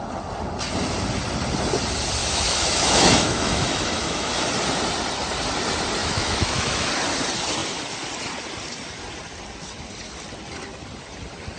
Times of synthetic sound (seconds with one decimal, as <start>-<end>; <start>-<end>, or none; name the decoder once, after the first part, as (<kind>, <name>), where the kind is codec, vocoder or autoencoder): 2.2-4.4 (autoencoder, DAC-VAE); 6.0-6.9